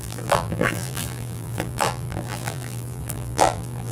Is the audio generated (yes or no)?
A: yes